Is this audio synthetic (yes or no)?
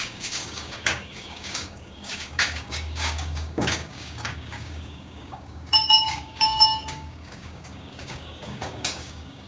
yes